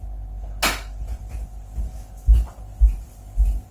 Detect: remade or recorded recorded